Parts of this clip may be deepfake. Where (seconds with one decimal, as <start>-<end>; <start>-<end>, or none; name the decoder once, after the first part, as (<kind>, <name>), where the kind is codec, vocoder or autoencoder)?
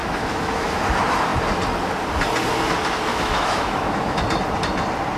0.0-0.8 (autoencoder, DAC-VAE); 3.1-4.2